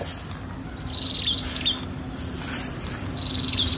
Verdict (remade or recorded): remade